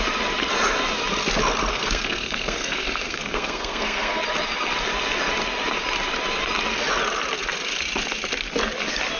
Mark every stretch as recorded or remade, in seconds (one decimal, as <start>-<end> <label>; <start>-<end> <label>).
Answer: 0.0-1.7 recorded; 1.7-4.2 remade; 4.2-9.2 recorded